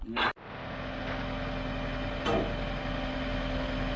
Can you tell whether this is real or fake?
real